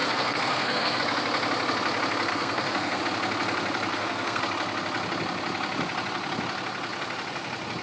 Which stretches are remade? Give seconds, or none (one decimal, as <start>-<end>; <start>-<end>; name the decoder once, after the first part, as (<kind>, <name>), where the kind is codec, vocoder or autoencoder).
0.0-1.0 (codec, SNAC); 2.3-3.0; 3.9-4.4